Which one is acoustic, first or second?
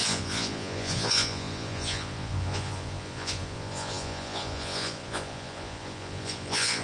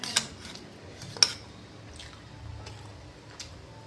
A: second